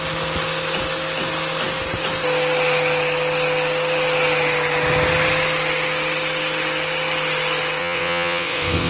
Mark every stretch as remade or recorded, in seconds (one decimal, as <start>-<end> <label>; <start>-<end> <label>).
0.0-7.8 recorded; 7.8-8.9 remade